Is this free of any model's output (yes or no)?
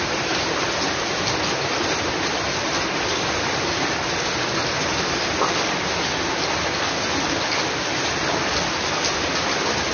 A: yes